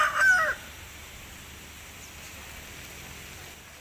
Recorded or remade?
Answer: recorded